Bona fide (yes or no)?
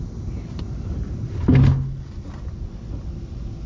yes